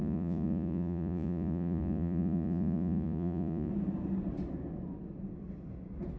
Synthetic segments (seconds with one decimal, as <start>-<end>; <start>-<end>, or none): 0.0-3.7